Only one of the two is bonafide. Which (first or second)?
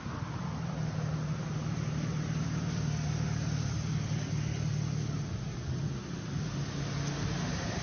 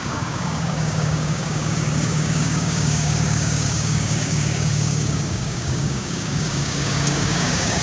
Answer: first